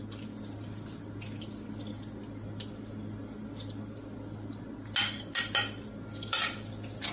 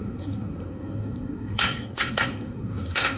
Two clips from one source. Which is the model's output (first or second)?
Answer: second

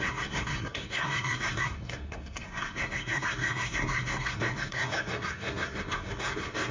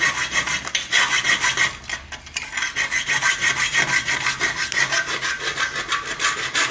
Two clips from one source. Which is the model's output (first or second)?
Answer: first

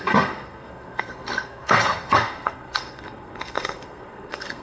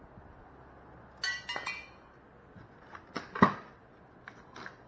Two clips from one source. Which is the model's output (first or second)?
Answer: first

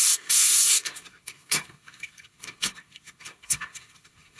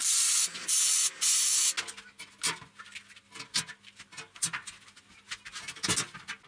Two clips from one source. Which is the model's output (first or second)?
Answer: first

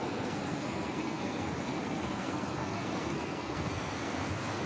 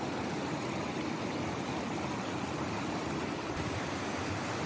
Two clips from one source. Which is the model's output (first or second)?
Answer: first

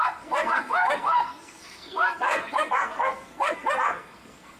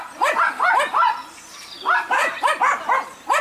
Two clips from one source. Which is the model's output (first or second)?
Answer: first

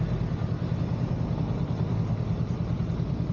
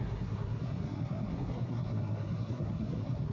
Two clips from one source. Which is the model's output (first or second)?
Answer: second